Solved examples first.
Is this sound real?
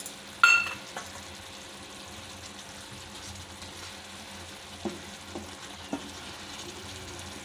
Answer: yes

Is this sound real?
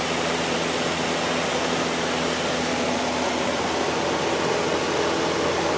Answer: yes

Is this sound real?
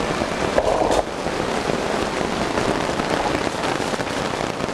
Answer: no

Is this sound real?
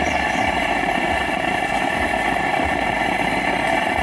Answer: no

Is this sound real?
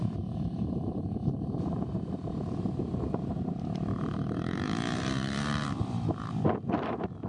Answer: no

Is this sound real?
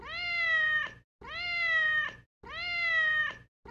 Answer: yes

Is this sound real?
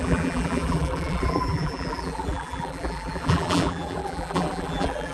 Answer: no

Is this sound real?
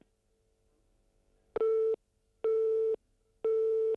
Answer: yes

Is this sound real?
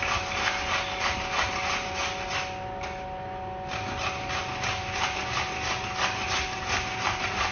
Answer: yes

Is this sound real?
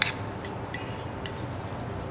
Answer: yes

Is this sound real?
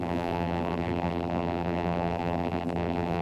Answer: no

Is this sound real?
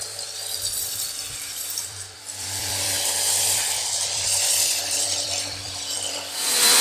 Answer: no